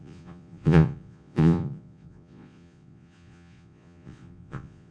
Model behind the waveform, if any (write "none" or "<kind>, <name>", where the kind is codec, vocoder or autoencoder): vocoder, Vocos